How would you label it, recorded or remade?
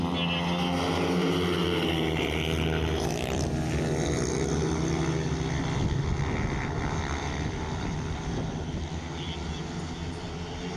recorded